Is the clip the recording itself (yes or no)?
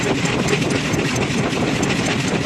yes